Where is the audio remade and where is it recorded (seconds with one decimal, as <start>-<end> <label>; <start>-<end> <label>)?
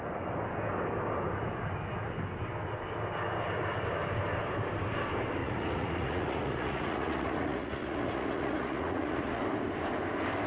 0.0-5.4 recorded; 5.4-9.4 remade; 9.4-10.5 recorded